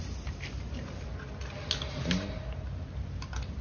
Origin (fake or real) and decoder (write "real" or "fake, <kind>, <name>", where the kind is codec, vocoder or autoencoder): real